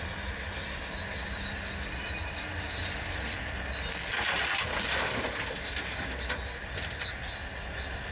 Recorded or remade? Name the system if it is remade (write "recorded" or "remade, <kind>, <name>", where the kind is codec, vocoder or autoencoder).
recorded